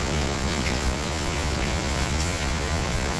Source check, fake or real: fake